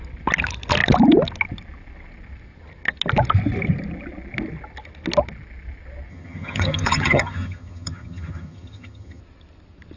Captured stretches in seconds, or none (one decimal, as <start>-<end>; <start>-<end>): 0.0-6.1; 9.2-10.0